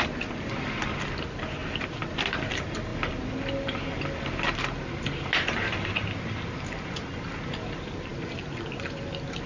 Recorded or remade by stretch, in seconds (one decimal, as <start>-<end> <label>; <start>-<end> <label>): 0.0-9.5 recorded

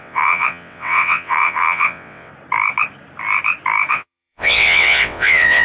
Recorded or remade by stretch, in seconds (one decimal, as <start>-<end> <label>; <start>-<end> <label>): 0.0-2.3 remade; 2.3-3.9 recorded; 3.9-5.6 remade

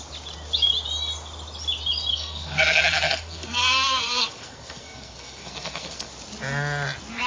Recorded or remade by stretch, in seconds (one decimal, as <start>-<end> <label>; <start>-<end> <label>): 0.0-2.1 recorded; 2.1-6.1 remade; 6.1-7.3 recorded

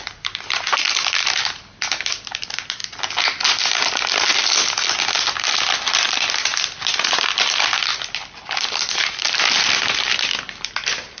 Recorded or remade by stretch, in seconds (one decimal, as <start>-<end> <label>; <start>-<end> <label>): 0.0-2.8 remade; 2.8-5.9 recorded; 5.9-11.2 remade

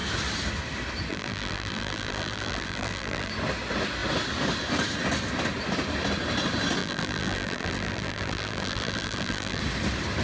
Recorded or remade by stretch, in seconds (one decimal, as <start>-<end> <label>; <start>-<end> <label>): 0.0-1.1 recorded; 1.1-3.3 remade; 3.3-6.8 recorded; 6.8-9.6 remade; 9.6-10.2 recorded

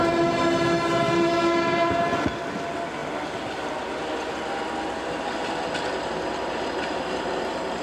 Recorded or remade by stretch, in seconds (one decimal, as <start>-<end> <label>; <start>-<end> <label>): 0.0-7.8 recorded

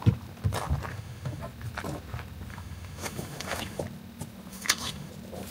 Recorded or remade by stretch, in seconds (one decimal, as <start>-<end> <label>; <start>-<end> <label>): 0.0-0.9 recorded; 0.9-1.4 remade; 1.4-2.5 recorded; 2.5-3.8 remade; 3.8-4.5 recorded; 4.5-5.1 remade; 5.1-5.5 recorded